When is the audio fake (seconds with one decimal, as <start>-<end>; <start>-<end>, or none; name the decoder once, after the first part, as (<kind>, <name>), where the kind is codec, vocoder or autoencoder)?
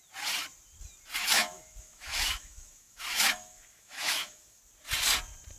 1.2-4.6 (autoencoder, DAC-VAE)